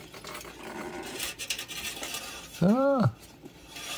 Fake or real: fake